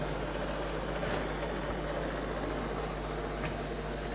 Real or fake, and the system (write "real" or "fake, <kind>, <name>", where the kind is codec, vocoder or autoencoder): real